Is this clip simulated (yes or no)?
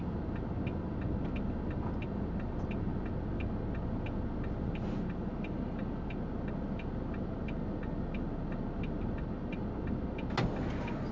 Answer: no